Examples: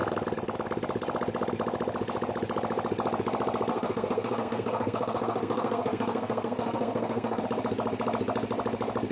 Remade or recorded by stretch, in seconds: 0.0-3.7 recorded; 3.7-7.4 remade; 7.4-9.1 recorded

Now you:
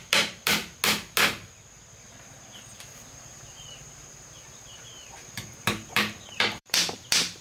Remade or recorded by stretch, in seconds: 0.0-0.6 remade; 0.6-2.7 recorded; 2.7-7.4 remade